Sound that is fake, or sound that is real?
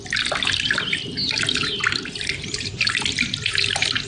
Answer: real